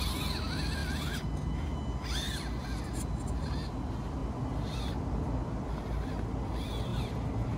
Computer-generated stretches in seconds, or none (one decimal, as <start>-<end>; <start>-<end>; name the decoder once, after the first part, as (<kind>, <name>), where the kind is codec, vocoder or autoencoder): 6.9-7.6 (vocoder, BigVGAN v2)

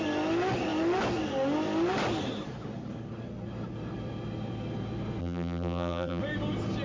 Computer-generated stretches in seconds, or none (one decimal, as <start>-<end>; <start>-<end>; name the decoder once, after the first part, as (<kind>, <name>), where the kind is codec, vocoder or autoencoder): 5.2-6.2 (vocoder, BigVGAN v2)

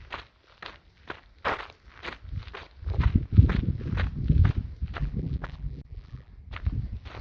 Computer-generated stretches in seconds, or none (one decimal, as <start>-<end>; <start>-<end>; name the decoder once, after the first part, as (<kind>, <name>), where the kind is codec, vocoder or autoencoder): 5.0-6.3 (vocoder, BigVGAN v2)

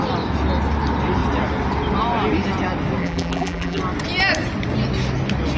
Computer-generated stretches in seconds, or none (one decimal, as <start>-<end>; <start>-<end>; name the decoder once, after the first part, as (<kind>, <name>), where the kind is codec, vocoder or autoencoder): 3.0-3.8 (vocoder, BigVGAN v2)

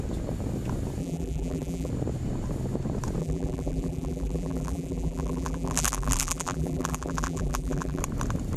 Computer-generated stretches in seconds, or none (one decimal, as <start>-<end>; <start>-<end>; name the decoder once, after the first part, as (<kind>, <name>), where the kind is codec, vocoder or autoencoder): 1.0-1.9 (vocoder, BigVGAN v2); 3.2-8.0

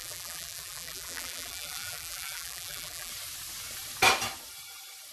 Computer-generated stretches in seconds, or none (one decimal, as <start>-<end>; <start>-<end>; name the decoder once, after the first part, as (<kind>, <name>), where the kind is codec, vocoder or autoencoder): 0.0-3.1 (vocoder, BigVGAN v2)